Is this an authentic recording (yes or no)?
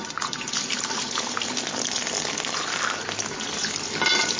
yes